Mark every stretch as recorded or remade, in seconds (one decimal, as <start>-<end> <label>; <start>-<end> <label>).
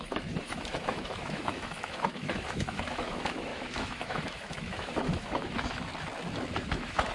0.0-5.9 remade; 5.9-6.5 recorded; 6.5-7.1 remade